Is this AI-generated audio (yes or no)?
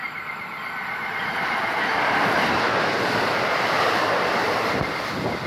yes